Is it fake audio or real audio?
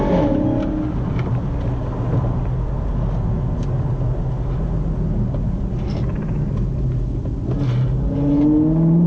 real